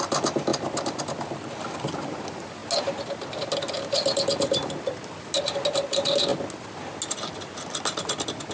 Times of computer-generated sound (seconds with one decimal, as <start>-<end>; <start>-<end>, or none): none